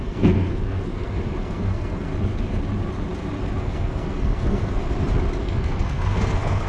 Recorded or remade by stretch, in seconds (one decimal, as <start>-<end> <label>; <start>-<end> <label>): 0.0-2.1 remade; 2.1-3.6 recorded; 3.6-4.8 remade; 4.8-5.4 recorded; 5.4-6.7 remade